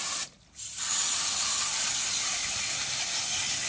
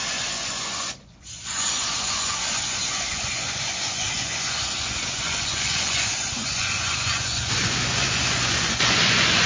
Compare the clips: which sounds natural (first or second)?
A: first